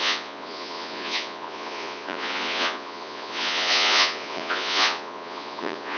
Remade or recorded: remade